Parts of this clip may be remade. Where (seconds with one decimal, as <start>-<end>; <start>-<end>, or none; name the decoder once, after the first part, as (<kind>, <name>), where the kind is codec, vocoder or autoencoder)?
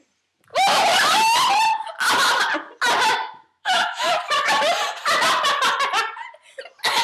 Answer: 3.2-4.2 (autoencoder, DAC-VAE)